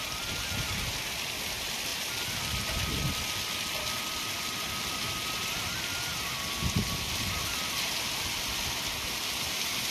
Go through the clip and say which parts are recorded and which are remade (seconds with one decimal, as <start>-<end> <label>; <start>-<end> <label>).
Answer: 0.0-9.9 recorded